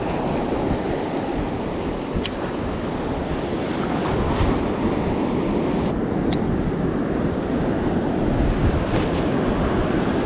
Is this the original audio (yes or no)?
yes